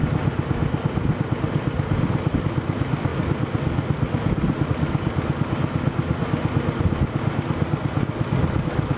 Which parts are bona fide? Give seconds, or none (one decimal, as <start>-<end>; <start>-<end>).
0.0-9.0